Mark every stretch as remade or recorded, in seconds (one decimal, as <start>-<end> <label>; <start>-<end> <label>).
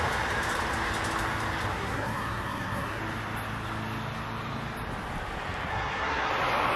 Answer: 0.0-1.7 recorded; 1.7-3.0 remade; 3.0-5.7 recorded; 5.7-6.3 remade; 6.3-6.8 recorded